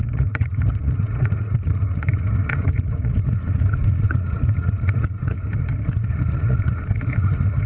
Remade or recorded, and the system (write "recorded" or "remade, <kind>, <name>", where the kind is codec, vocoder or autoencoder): remade, vocoder, Vocos